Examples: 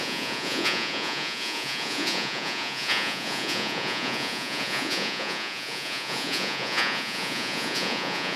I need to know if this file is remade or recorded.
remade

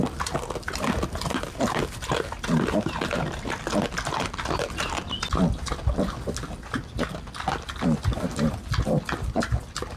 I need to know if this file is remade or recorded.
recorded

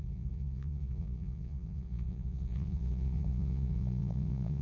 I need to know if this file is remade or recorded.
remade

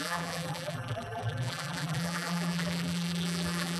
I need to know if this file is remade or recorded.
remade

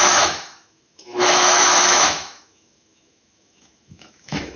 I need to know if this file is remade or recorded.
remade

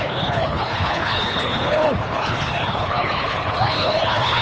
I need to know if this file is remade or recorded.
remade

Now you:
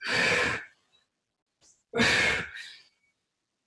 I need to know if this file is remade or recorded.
recorded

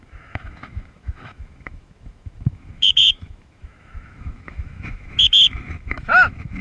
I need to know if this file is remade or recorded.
remade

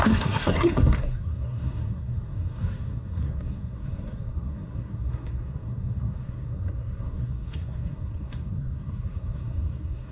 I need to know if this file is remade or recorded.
remade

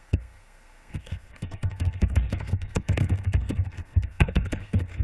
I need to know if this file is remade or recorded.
remade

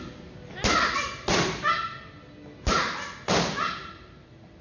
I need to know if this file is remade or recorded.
recorded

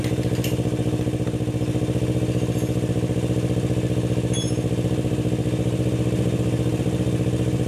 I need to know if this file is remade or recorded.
recorded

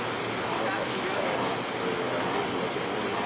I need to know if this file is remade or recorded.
recorded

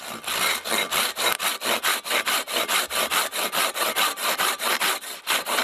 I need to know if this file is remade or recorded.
remade